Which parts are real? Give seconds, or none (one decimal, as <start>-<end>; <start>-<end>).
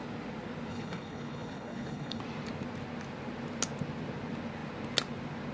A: 0.0-0.7; 2.2-5.5